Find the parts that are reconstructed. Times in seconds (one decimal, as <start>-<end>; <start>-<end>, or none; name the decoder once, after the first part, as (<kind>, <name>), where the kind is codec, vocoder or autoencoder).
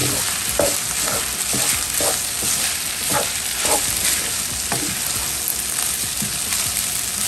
3.1-4.2 (vocoder, BigVGAN v2)